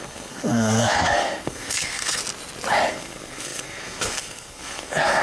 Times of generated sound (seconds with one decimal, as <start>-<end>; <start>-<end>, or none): 0.0-2.2; 2.9-5.2